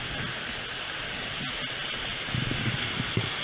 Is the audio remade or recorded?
recorded